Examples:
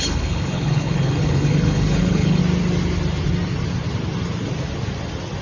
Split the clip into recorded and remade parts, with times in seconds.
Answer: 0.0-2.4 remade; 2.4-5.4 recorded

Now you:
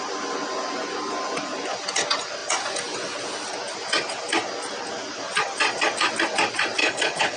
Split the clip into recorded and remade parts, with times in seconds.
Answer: 0.0-6.8 recorded; 6.8-7.4 remade

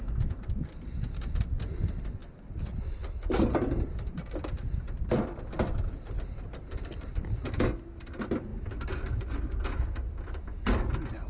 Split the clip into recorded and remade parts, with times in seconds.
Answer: 0.0-11.3 recorded